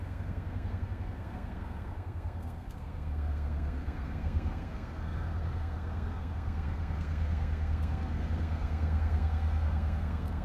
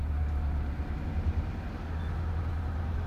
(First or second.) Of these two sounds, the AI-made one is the first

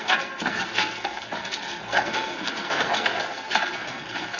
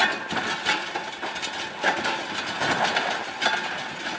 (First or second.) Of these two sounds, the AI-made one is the first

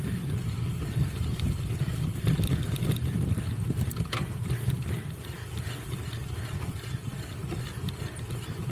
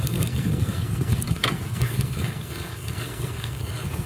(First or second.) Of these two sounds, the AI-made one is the second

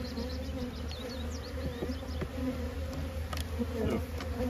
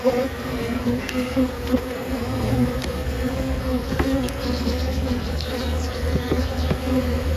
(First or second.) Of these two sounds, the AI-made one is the second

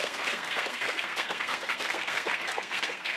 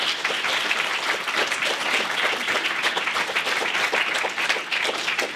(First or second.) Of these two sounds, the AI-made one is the first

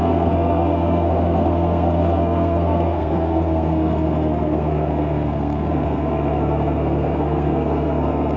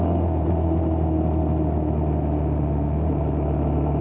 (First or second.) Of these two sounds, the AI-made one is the first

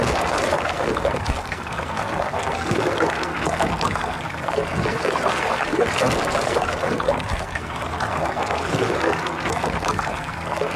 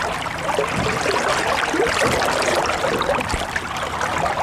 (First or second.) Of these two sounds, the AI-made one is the first